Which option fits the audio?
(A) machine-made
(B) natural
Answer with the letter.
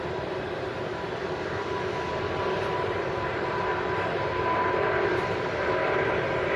A